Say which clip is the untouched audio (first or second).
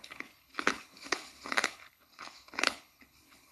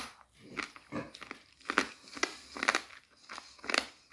second